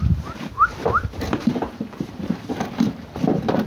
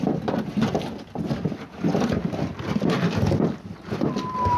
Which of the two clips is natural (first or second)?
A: second